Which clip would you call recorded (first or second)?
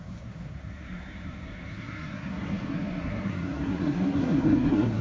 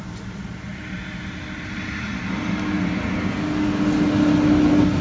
second